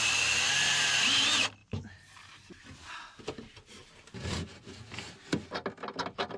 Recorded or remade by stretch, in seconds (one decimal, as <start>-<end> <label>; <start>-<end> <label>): 0.0-1.6 recorded; 1.6-2.5 remade; 2.5-6.4 recorded